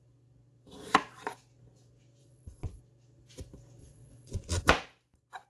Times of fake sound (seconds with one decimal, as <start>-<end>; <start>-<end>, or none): 2.2-2.8; 3.8-4.6

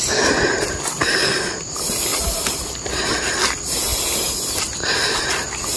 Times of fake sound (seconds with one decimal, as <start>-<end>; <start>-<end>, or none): none

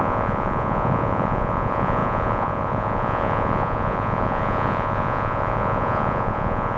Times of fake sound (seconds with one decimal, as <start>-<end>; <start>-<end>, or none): 0.0-6.8

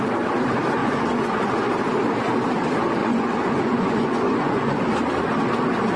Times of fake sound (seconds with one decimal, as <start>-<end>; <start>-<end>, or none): 0.8-1.4; 3.0-4.8

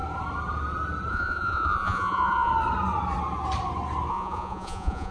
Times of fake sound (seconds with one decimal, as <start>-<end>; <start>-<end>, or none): 1.1-2.5; 4.1-5.1

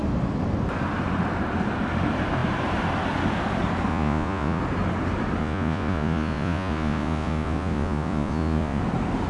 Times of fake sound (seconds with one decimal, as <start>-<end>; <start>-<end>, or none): 3.9-4.6; 5.4-8.8

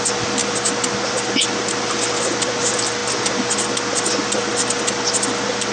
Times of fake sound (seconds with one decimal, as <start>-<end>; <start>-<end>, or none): none

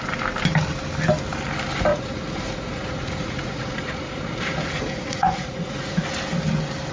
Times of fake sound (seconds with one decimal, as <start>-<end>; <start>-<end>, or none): 1.9-6.0